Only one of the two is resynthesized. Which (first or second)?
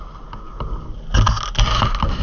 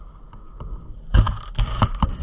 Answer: second